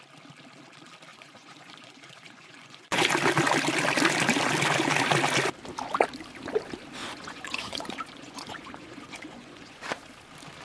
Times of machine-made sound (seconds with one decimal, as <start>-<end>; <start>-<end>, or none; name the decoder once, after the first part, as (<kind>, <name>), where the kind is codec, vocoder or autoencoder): 1.1-3.0 (vocoder, Vocos); 7.0-9.9